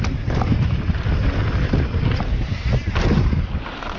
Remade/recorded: recorded